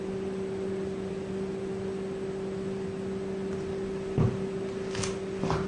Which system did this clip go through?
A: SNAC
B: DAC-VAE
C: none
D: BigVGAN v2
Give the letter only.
C